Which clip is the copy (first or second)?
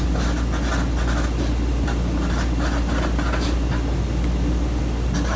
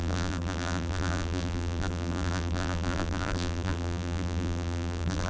second